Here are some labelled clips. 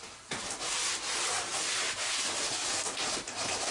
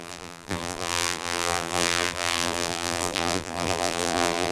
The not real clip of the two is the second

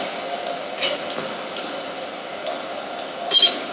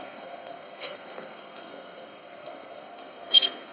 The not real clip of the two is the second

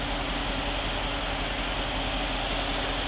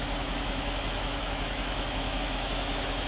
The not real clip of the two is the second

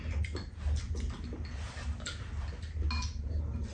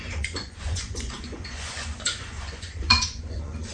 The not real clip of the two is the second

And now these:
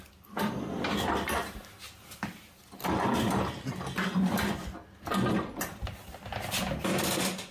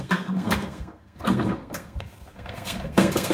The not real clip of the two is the second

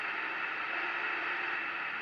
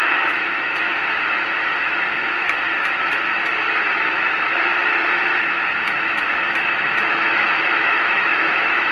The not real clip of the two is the second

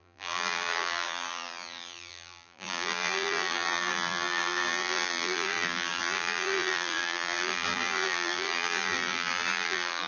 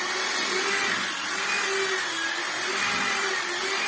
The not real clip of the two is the first